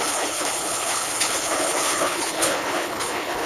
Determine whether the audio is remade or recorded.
remade